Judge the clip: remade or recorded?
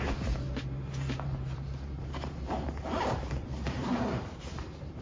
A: remade